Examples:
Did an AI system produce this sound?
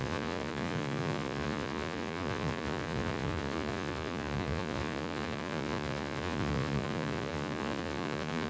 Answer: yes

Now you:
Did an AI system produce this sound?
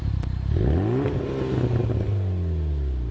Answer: no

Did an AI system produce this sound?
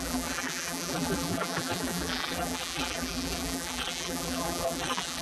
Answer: yes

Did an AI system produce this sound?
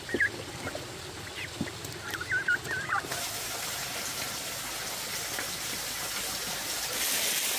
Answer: no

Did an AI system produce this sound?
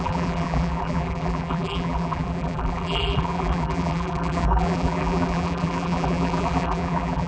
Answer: yes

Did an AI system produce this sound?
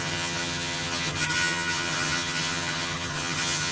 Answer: yes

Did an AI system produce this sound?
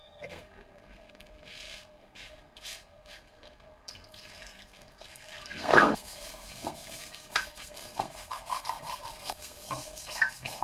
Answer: yes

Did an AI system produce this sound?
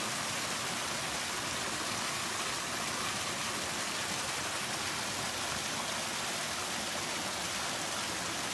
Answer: no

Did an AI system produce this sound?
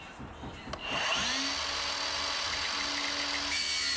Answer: no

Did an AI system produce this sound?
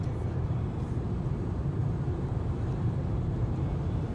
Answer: yes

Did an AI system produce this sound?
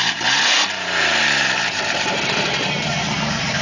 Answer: yes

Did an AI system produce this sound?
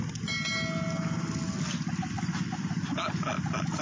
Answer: no